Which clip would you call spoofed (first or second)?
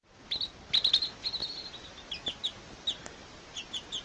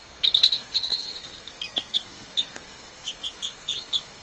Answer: second